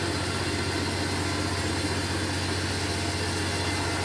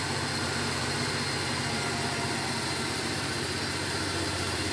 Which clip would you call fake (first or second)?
second